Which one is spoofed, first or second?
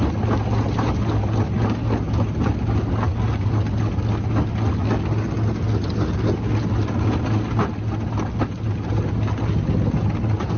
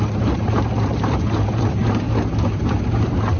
second